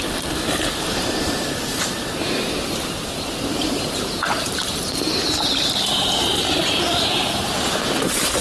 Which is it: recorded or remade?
remade